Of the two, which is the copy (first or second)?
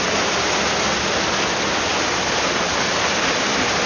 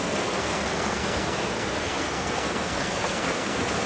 second